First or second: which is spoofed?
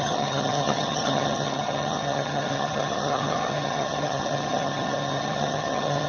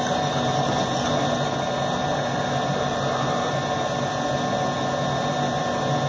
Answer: first